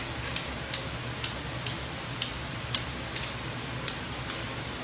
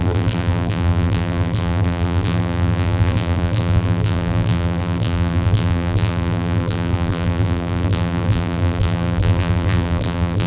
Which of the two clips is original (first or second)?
first